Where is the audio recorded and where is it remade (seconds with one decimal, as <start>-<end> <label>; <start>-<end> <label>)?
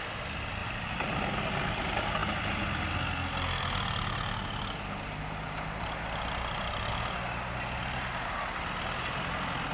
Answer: 0.0-0.6 recorded; 0.6-1.1 remade; 1.1-9.7 recorded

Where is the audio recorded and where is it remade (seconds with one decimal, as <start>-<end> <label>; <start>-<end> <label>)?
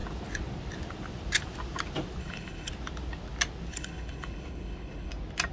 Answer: 0.0-2.2 recorded; 2.2-2.7 remade; 2.7-3.7 recorded; 3.7-5.1 remade; 5.1-5.5 recorded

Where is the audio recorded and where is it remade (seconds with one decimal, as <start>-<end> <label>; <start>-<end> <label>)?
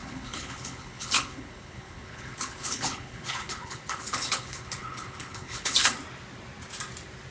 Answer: 0.0-5.9 remade; 5.9-7.3 recorded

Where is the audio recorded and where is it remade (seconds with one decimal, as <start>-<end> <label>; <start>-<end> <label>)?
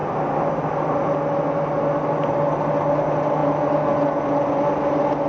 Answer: 0.0-5.3 recorded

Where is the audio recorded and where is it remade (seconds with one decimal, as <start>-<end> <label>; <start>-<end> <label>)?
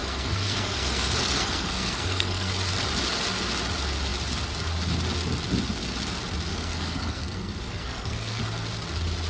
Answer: 0.0-2.5 remade; 2.5-6.5 recorded; 6.5-8.4 remade; 8.4-9.3 recorded